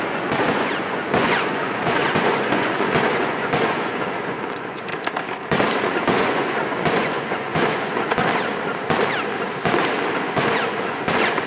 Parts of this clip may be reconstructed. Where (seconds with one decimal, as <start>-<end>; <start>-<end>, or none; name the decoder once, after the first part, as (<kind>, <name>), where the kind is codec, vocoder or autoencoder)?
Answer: 0.0-4.9 (vocoder, Vocos); 5.8-8.1; 10.2-11.5